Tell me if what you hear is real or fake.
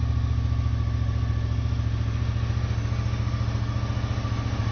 real